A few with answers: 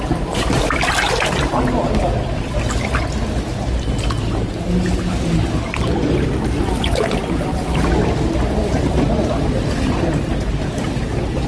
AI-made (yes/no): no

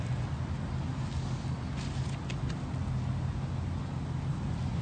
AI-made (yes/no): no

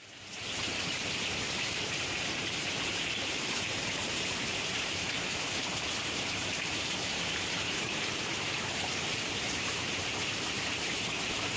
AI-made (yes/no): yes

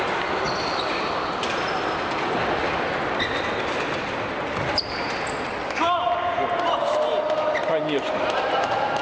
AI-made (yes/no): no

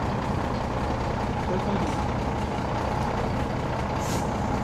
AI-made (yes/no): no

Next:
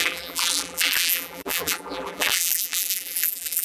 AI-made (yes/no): yes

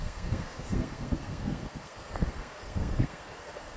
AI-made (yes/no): yes